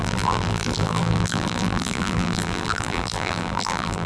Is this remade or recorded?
remade